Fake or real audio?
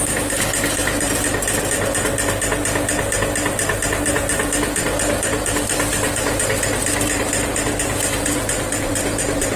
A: real